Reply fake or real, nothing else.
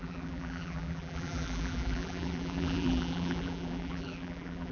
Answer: fake